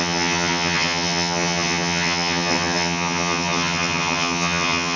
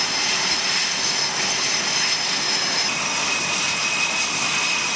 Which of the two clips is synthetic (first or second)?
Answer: first